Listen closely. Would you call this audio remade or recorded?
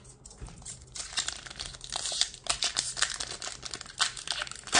recorded